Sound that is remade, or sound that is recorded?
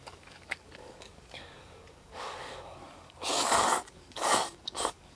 remade